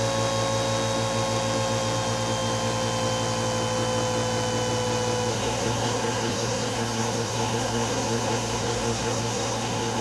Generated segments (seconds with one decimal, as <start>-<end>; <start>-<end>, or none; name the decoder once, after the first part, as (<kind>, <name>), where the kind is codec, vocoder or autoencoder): 5.3-10.0 (codec, SNAC)